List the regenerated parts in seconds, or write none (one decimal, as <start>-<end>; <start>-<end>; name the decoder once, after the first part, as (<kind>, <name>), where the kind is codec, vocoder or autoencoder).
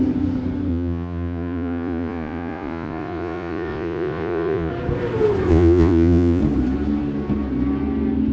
0.7-4.7 (vocoder, Vocos); 5.5-6.4